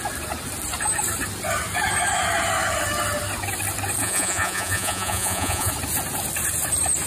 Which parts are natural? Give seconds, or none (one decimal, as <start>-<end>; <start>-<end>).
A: 0.0-4.0; 5.7-7.1